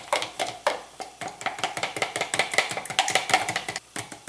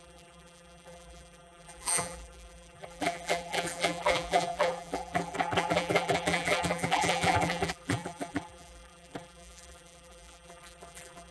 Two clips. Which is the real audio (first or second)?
first